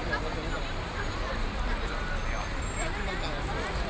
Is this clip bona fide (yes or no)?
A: yes